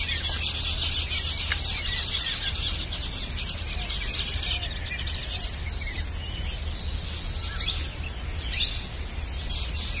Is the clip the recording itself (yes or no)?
yes